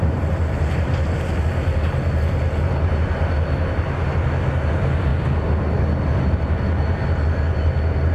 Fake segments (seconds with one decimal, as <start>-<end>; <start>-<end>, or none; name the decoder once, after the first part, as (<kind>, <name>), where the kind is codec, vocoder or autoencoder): none